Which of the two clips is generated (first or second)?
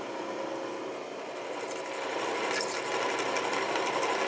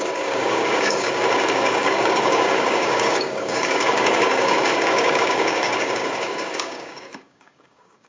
second